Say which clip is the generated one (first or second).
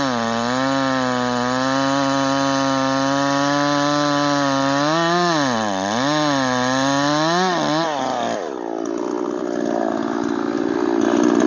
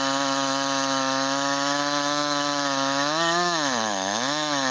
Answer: second